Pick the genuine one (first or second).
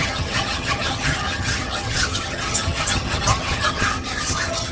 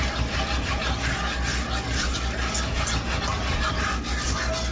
second